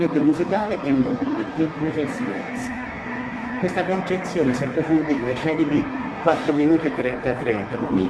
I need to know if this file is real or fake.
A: fake